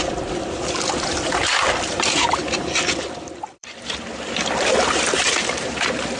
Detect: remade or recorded remade